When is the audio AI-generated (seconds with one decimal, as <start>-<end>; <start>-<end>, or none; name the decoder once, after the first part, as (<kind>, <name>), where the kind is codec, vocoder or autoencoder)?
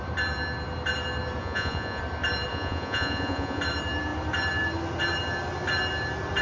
1.4-2.0 (vocoder, Vocos); 2.5-3.6